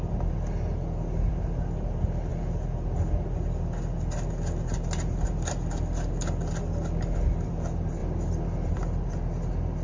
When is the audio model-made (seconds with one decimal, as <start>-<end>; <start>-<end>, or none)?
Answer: none